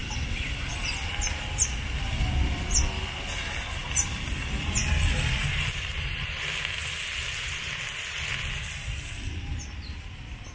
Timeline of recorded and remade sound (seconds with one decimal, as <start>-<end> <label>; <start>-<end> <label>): 0.0-10.5 recorded